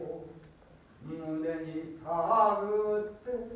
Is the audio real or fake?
real